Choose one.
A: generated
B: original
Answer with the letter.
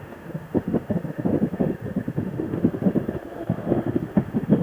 A